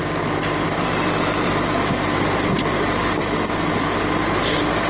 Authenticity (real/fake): real